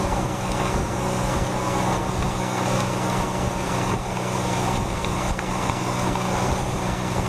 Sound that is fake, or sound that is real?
fake